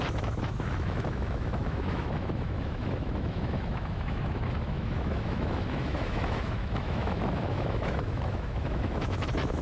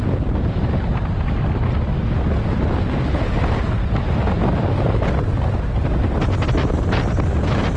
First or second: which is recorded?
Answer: second